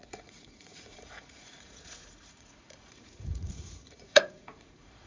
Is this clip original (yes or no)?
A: no